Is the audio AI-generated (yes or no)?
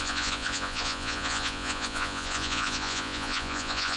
yes